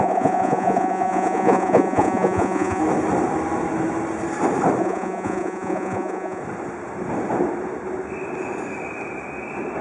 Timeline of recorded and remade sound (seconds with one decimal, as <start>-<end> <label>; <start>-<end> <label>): 0.0-2.8 remade; 2.8-4.8 recorded; 4.8-6.4 remade; 6.4-9.8 recorded